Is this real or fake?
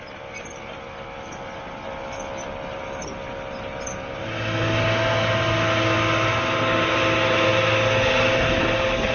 real